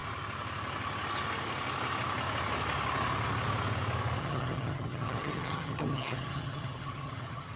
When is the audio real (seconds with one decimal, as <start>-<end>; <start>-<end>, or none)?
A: 0.0-4.2